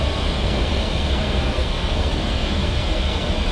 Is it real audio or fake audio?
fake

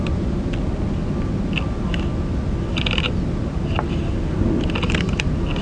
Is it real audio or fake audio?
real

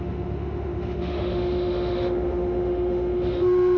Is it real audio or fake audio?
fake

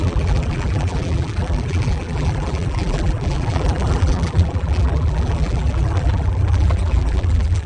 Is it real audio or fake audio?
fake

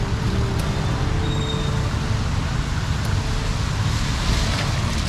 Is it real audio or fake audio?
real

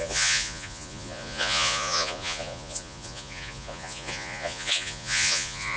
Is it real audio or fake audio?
fake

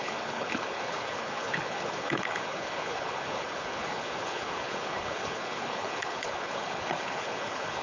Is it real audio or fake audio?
fake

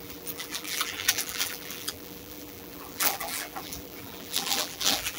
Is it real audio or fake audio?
fake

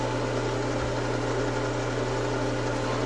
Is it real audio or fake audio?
real